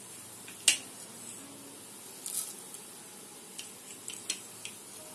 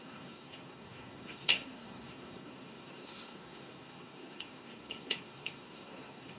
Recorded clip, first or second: first